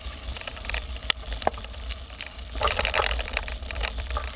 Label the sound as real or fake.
fake